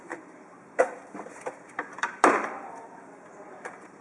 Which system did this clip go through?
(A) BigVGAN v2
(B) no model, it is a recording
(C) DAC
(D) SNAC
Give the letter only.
A